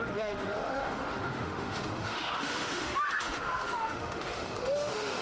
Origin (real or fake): fake